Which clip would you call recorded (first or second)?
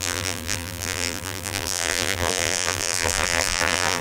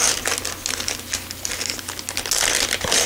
second